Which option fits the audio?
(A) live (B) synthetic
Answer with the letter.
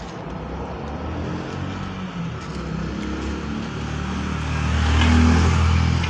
A